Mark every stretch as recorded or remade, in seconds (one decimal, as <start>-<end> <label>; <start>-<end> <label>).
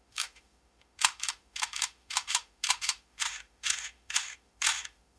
0.0-5.2 remade